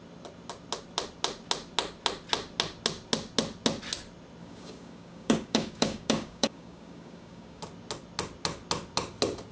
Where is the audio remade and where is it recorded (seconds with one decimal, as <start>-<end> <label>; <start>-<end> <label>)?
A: 0.0-4.4 recorded; 4.4-7.6 remade; 7.6-9.5 recorded